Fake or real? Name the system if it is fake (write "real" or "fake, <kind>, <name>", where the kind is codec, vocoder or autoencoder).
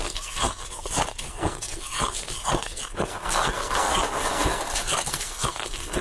fake, codec, SNAC